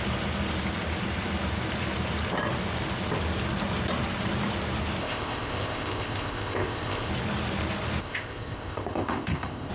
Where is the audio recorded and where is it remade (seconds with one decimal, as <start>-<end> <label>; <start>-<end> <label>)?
0.0-5.0 recorded; 5.0-7.1 remade; 7.1-8.0 recorded; 8.0-9.7 remade